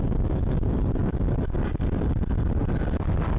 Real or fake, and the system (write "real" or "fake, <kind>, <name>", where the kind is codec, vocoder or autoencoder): real